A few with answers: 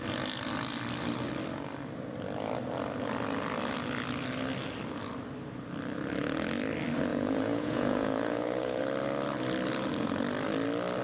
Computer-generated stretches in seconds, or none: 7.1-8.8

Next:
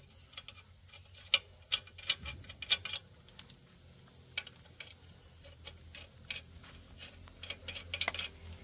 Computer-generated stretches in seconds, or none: none

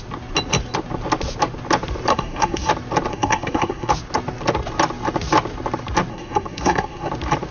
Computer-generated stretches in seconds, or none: 2.1-2.7; 3.1-3.9; 6.1-7.1